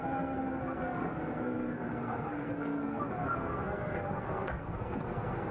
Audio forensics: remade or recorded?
remade